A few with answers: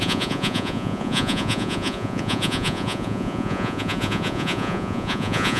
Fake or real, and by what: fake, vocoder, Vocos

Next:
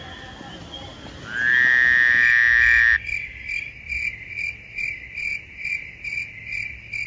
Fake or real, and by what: real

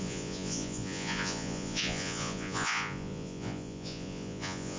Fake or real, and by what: fake, vocoder, Vocos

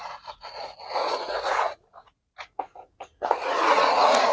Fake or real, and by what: fake, vocoder, Vocos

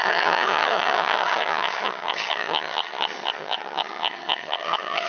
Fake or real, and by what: fake, vocoder, HiFi-GAN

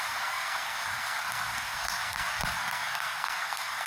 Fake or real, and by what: fake, codec, SNAC